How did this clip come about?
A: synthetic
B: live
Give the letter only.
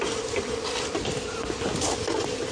B